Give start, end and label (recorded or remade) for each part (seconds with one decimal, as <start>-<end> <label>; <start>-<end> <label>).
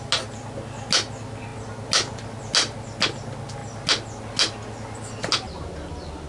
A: 0.0-6.3 recorded